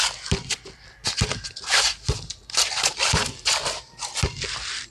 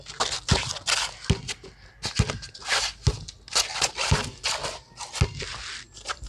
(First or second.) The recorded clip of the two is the second